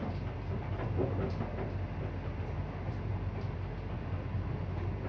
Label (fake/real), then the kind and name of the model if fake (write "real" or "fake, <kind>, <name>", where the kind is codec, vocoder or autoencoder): real